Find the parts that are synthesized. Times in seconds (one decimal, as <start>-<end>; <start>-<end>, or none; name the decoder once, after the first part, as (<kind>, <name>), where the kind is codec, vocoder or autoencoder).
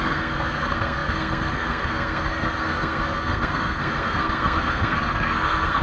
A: 0.0-5.8 (codec, SNAC)